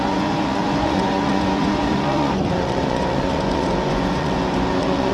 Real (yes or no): no